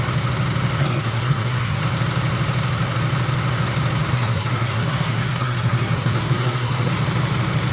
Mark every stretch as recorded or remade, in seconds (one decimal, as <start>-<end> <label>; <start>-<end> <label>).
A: 0.0-0.8 recorded; 0.8-1.8 remade; 1.8-4.1 recorded; 4.1-6.9 remade; 6.9-7.7 recorded